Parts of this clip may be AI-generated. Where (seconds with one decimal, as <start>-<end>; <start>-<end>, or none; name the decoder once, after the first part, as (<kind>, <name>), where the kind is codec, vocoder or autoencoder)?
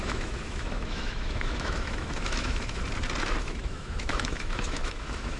0.0-2.8 (autoencoder, DAC-VAE); 3.4-5.4